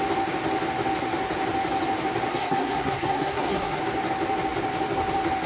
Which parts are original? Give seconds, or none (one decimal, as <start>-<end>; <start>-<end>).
0.0-2.3; 3.8-5.5